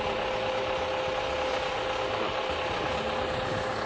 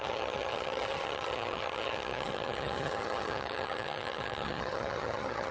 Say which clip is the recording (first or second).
first